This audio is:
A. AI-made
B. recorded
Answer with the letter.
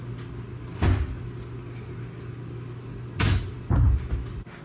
B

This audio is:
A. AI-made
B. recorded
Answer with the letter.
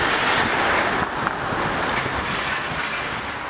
B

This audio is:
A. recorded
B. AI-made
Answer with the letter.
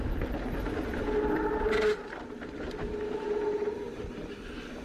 A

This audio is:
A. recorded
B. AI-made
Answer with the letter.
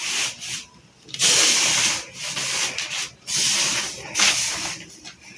A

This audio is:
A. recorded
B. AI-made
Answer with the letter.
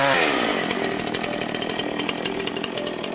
A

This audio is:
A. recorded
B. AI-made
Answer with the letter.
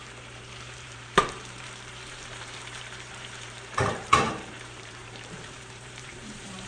B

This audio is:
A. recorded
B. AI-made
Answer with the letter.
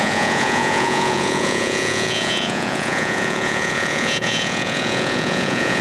B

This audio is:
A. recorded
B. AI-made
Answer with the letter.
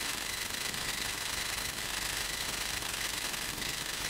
B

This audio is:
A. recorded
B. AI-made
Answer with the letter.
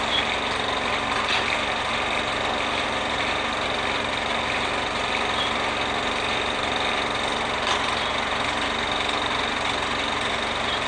A